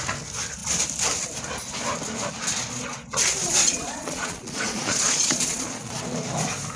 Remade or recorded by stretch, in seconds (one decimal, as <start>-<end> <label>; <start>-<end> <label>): 0.0-3.4 recorded; 3.4-6.0 remade; 6.0-6.8 recorded